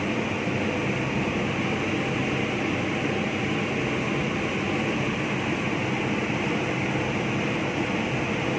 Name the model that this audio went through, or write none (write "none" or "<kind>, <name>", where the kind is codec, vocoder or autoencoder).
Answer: none